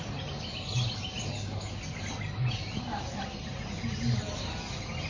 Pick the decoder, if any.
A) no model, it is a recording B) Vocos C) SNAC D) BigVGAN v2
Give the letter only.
A